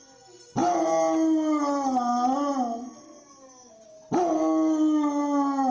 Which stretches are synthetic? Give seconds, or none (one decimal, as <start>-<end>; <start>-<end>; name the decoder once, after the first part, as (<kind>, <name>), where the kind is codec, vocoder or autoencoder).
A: none

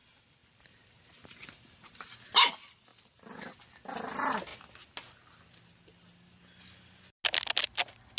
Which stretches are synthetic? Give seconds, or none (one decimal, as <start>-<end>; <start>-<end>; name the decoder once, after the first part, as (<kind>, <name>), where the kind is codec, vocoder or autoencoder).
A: 0.0-2.5 (vocoder, BigVGAN v2); 2.9-3.5

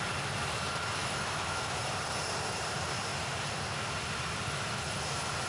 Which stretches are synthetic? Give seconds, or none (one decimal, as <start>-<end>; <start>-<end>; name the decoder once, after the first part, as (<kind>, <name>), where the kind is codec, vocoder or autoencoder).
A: 1.0-1.8 (autoencoder, DAC-VAE)

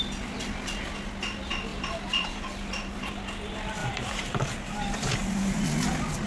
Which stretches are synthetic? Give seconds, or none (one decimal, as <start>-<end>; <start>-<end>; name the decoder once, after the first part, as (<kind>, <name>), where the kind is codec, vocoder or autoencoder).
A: 1.7-3.1 (vocoder, BigVGAN v2); 3.8-5.6

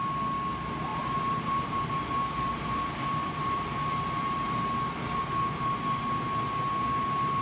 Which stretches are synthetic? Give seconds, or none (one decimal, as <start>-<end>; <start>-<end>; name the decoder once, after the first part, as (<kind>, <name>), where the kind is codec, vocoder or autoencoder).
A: 0.9-5.2 (vocoder, BigVGAN v2)

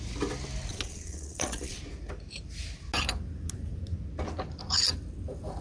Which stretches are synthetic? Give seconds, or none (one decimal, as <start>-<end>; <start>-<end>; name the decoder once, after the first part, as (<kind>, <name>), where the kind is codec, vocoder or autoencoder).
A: 0.7-1.8 (vocoder, Vocos)

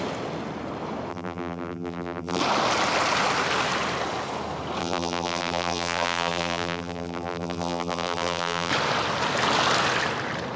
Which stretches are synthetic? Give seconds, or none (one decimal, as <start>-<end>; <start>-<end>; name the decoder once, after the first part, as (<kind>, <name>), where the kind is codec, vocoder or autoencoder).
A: 1.1-2.4 (vocoder, BigVGAN v2); 4.8-8.7

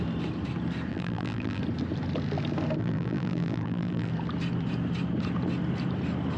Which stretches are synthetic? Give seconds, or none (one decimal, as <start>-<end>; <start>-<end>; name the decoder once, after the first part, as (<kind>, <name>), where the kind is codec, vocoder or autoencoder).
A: 0.9-1.6 (vocoder, BigVGAN v2); 2.8-4.1